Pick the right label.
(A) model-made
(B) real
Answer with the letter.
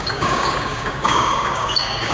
A